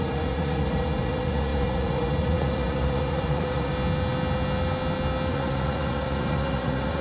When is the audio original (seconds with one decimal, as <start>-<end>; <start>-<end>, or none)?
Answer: 3.7-5.3